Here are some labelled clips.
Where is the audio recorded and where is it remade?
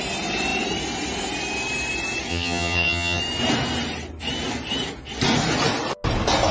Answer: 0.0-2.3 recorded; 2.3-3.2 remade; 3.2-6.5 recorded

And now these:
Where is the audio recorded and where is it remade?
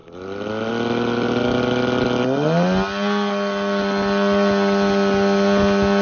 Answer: 0.0-6.0 recorded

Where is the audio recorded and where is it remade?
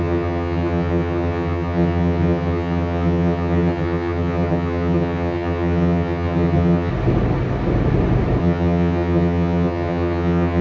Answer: 0.0-6.9 remade; 6.9-8.4 recorded; 8.4-10.6 remade